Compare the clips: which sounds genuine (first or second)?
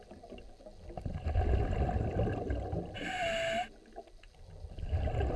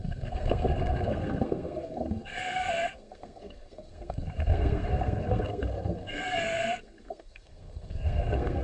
first